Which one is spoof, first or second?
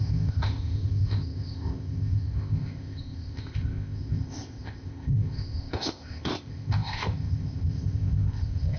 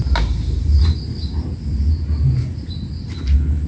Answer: first